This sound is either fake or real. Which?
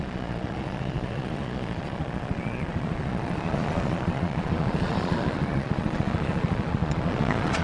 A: fake